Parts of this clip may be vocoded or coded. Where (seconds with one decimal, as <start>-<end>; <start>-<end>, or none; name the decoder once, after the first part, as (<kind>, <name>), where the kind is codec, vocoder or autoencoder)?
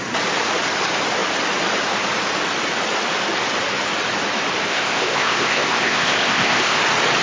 4.7-6.8 (codec, ZipCodec)